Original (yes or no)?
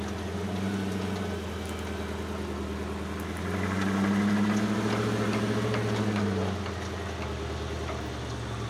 yes